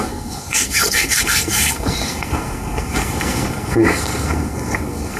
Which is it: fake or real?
fake